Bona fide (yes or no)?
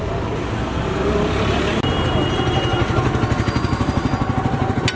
yes